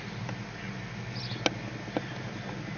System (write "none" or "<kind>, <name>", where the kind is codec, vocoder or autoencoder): none